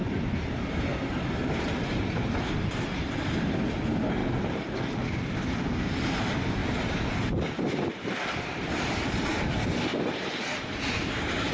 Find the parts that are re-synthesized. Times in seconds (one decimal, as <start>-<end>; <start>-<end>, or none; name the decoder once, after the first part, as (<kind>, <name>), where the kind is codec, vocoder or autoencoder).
0.6-11.5 (vocoder, BigVGAN v2)